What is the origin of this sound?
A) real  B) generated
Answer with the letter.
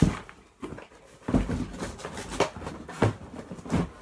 A